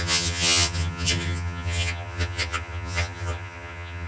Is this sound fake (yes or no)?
yes